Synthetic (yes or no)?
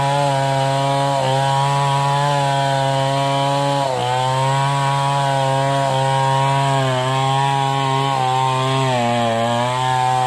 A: no